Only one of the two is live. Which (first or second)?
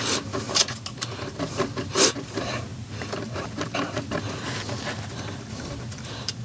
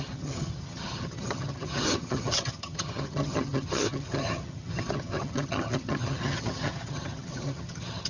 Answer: first